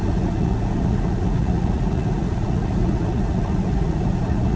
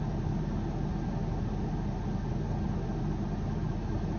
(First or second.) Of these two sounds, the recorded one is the second